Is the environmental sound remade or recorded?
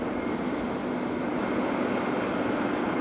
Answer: recorded